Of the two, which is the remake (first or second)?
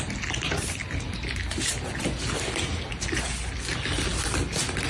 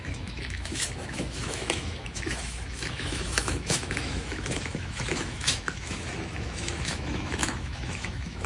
second